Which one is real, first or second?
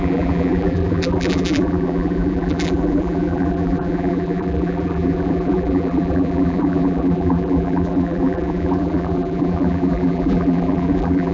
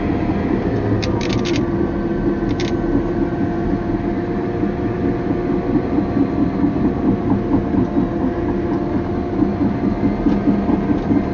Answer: second